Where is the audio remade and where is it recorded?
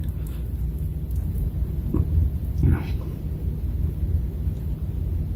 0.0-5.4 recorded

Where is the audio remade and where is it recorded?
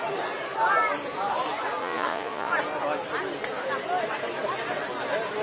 0.0-1.8 recorded; 1.8-2.5 remade; 2.5-5.4 recorded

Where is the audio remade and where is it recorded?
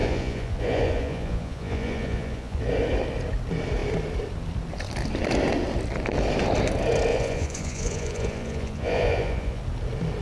0.0-2.6 remade; 2.6-7.1 recorded; 7.1-9.6 remade; 9.6-10.2 recorded